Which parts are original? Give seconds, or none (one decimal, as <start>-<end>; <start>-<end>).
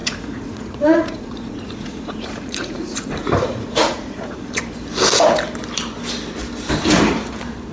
4.6-7.7